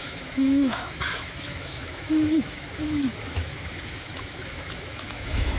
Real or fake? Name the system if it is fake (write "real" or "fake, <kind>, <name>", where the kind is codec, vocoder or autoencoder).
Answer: fake, autoencoder, DAC-VAE